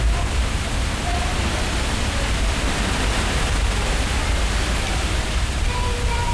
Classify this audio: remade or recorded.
recorded